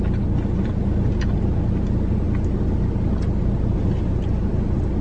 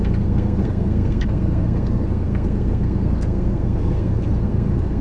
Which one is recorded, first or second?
first